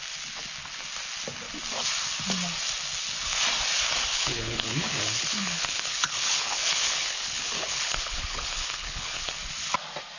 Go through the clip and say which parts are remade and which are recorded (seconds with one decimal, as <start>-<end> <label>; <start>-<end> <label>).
0.0-4.1 recorded; 4.1-9.3 remade; 9.3-10.2 recorded